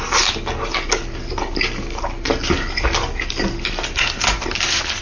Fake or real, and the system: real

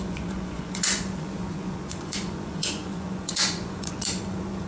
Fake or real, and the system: fake, vocoder, Vocos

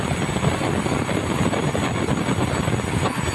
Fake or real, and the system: real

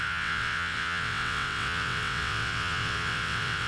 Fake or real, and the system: fake, vocoder, WaveNeXt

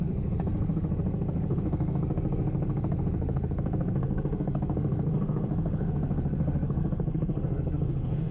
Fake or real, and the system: fake, codec, SNAC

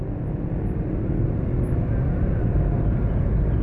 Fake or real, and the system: real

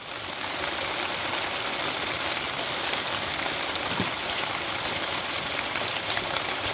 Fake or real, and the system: real